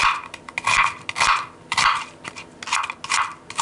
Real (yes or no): yes